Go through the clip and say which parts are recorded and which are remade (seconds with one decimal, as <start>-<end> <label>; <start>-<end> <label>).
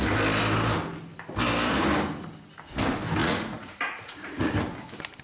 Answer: 0.0-3.2 recorded; 3.2-4.5 remade; 4.5-5.2 recorded